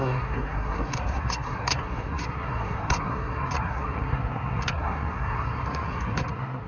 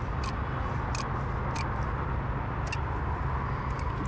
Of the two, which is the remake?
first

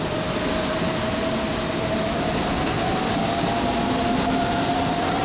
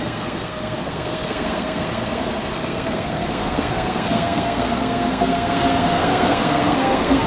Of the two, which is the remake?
second